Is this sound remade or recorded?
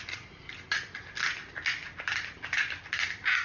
recorded